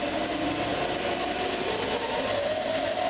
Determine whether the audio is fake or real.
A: real